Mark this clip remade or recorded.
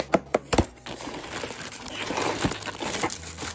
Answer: recorded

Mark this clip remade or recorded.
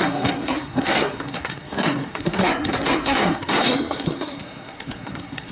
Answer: remade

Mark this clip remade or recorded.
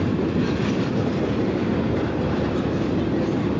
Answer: recorded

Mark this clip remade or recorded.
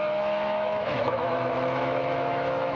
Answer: remade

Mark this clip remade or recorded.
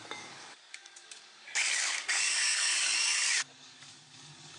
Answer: remade